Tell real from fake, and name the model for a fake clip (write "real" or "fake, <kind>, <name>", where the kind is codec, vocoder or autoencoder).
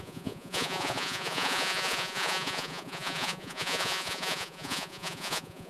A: fake, vocoder, Vocos